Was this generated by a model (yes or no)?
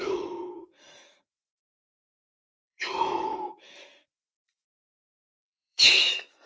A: yes